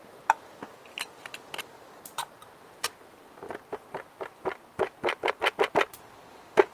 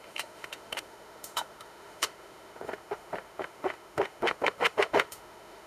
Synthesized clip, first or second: second